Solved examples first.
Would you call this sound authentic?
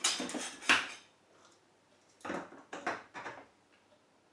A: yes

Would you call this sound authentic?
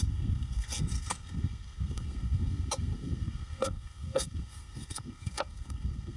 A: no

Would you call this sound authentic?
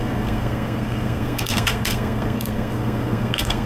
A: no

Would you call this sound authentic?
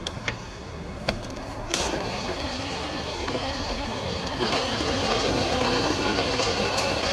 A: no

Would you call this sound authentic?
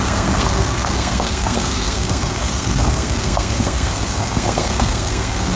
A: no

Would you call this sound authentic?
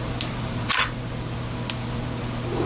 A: yes